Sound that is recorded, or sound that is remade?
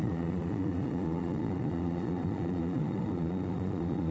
remade